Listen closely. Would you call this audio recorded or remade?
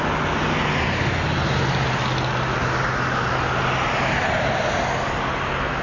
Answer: recorded